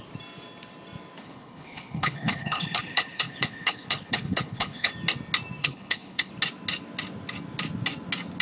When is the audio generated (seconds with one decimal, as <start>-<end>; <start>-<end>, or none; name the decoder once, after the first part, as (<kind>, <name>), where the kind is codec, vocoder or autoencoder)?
1.2-4.9 (codec, HILCodec); 5.6-6.3